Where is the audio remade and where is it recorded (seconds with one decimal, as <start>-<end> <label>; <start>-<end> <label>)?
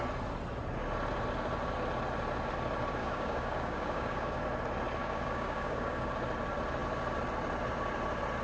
0.0-3.0 recorded; 3.0-4.4 remade; 4.4-5.0 recorded; 5.0-6.1 remade; 6.1-8.4 recorded